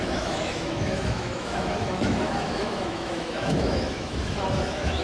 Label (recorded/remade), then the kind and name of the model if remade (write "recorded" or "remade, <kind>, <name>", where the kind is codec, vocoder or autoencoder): remade, autoencoder, DAC-VAE